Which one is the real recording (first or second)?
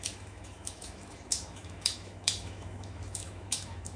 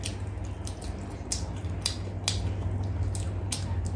second